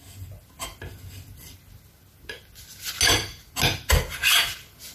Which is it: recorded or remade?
recorded